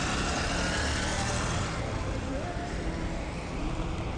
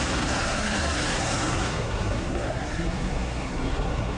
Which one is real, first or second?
first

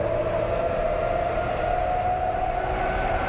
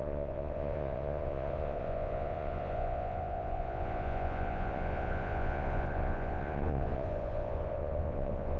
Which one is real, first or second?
first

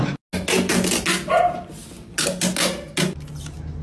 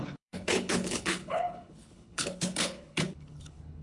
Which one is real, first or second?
first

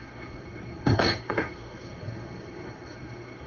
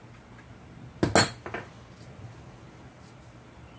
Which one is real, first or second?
second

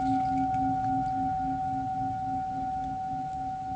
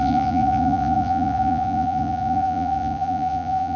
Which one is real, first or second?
first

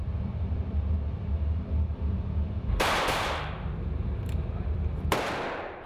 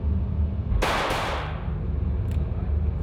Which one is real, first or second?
second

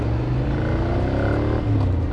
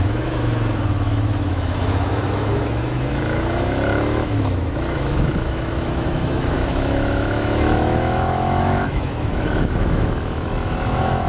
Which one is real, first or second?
first